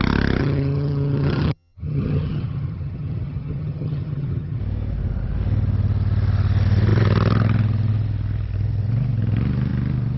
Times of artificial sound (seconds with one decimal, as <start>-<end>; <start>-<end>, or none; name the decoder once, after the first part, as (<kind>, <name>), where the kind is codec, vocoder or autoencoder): 0.4-4.6 (vocoder, HiFi-GAN)